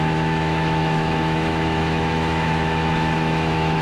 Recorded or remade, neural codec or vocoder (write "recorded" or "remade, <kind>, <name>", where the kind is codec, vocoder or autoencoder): remade, autoencoder, DAC-VAE